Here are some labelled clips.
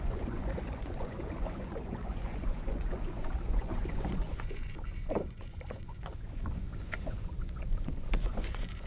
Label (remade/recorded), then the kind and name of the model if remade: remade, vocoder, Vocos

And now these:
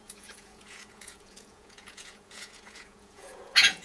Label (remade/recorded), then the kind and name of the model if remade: remade, vocoder, Vocos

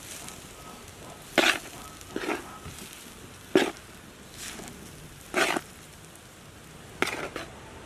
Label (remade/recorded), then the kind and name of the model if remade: recorded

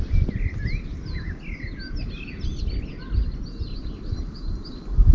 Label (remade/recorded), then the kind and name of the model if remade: recorded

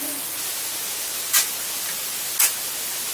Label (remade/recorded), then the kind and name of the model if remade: recorded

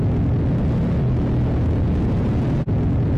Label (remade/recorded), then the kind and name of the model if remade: recorded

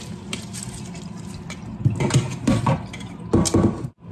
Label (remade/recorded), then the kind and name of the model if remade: recorded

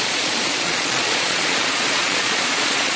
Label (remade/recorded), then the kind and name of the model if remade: remade, vocoder, Vocos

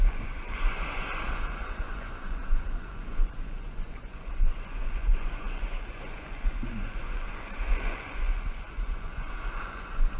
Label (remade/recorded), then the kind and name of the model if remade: remade, vocoder, Vocos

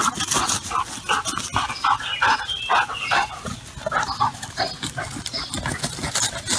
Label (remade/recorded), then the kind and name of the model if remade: recorded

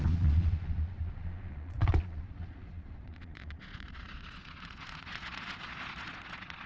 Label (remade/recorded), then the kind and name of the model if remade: remade, vocoder, Vocos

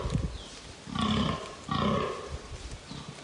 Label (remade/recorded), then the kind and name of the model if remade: recorded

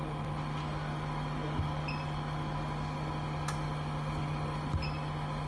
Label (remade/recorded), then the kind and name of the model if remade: recorded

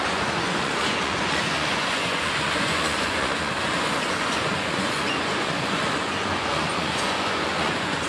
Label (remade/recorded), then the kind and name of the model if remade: remade, vocoder, Vocos